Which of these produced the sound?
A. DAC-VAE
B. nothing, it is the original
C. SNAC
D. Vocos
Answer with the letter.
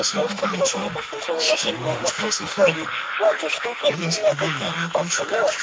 A